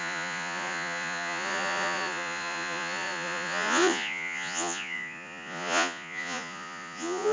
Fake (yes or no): yes